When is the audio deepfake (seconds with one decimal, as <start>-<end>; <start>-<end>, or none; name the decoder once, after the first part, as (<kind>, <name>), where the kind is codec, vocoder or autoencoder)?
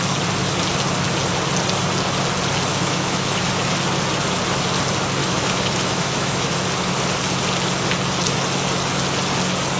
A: 2.7-3.5 (autoencoder, DAC-VAE); 5.2-6.6